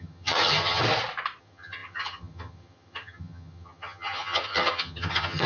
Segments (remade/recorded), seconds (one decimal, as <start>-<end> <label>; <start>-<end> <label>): 0.0-0.8 remade; 0.8-1.4 recorded; 1.4-5.5 remade